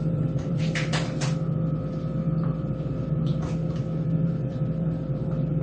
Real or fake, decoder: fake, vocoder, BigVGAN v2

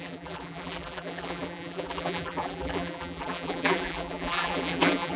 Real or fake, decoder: fake, vocoder, BigVGAN v2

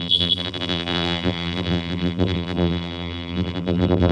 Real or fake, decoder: fake, vocoder, BigVGAN v2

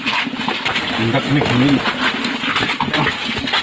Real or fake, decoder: real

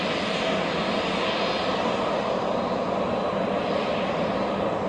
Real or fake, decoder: real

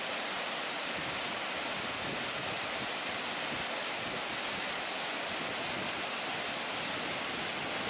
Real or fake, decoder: real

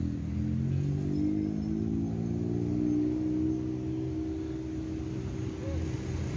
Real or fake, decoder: real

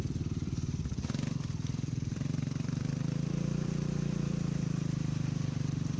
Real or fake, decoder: fake, vocoder, BigVGAN v2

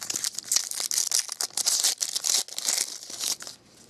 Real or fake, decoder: real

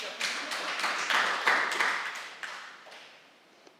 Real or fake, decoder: real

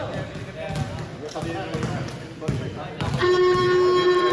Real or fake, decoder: real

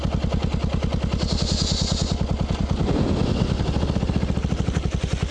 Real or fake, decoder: real